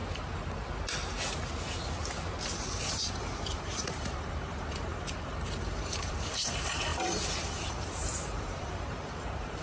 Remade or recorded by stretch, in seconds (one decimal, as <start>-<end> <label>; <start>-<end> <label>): 0.0-2.9 recorded; 2.9-9.6 remade